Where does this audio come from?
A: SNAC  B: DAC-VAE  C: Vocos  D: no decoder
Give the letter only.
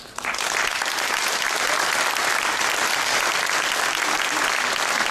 D